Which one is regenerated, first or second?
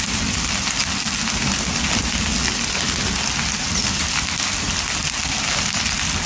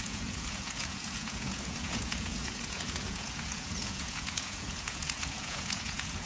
second